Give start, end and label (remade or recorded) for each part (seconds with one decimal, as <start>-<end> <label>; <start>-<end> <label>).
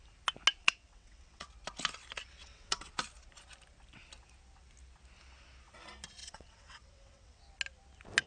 0.0-0.6 recorded; 0.6-1.5 remade; 1.5-2.4 recorded; 2.4-2.9 remade; 2.9-6.2 recorded; 6.2-7.4 remade; 7.4-8.3 recorded